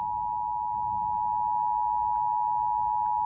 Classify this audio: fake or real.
real